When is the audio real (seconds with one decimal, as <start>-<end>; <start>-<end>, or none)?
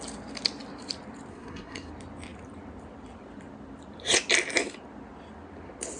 0.0-1.3; 1.9-6.0